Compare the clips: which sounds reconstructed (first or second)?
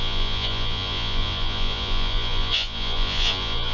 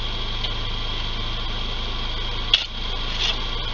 first